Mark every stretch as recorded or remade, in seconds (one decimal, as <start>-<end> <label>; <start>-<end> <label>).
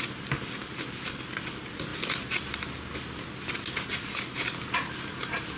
0.0-5.6 recorded